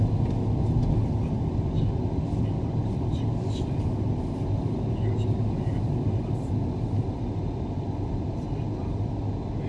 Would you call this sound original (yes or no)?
yes